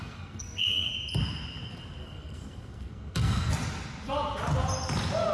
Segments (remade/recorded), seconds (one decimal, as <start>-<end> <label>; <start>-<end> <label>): 0.0-0.9 remade; 0.9-2.0 recorded; 2.0-3.5 remade; 3.5-5.3 recorded